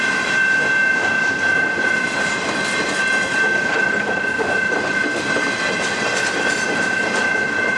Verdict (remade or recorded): recorded